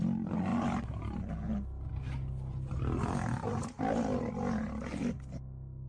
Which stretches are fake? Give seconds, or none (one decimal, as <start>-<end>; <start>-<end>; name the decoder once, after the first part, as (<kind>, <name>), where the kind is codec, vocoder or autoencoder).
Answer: none